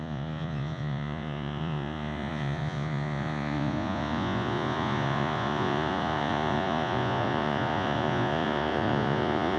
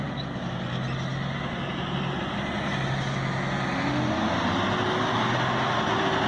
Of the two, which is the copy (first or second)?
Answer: first